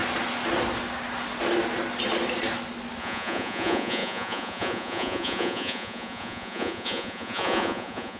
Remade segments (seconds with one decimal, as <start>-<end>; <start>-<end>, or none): 3.0-8.2